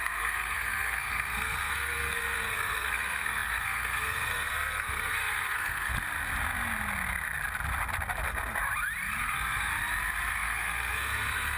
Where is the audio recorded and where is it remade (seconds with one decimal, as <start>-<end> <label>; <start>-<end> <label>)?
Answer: 0.0-5.9 remade; 5.9-9.2 recorded; 9.2-9.7 remade; 9.7-10.3 recorded; 10.3-11.6 remade